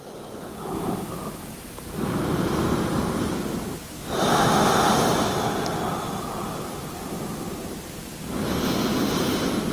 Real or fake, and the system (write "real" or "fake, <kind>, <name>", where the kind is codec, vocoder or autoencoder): real